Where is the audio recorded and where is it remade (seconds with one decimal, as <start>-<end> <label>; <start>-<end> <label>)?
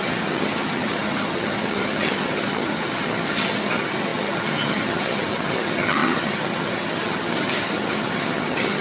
0.0-8.8 remade